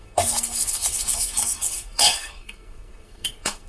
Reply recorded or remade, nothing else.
remade